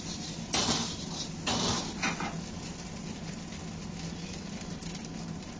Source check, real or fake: real